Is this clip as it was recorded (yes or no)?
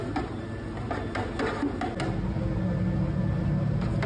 yes